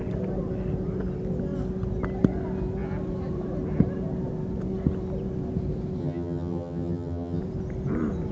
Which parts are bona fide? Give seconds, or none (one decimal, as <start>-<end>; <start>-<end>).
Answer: 0.0-6.0; 7.4-8.3